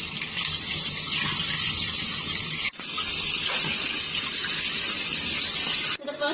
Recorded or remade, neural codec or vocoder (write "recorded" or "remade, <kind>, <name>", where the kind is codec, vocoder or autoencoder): recorded